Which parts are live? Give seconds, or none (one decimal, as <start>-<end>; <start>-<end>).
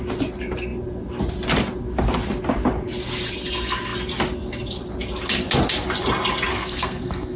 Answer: 0.0-6.5